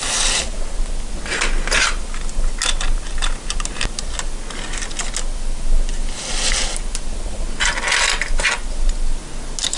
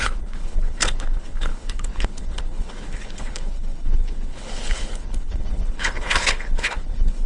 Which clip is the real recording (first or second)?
first